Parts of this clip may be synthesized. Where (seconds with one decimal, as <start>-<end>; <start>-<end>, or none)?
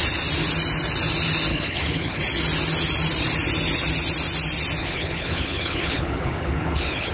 1.5-2.2; 4.8-7.1